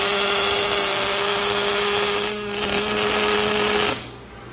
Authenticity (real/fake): real